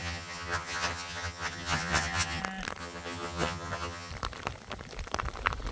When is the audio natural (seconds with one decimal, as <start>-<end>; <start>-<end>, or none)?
2.4-2.8; 4.1-5.7